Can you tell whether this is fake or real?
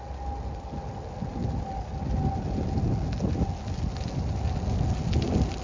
real